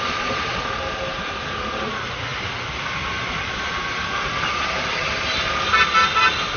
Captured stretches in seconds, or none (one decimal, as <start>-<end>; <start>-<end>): 0.0-6.6